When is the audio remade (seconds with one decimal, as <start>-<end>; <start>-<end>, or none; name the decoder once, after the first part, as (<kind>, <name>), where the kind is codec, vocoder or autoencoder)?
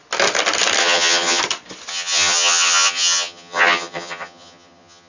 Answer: 0.8-1.4 (vocoder, HiFi-GAN); 1.9-5.1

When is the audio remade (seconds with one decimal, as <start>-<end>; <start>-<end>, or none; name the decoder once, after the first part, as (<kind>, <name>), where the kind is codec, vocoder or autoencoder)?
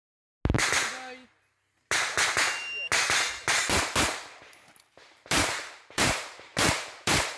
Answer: 4.4-6.5 (vocoder, BigVGAN v2); 7.0-7.4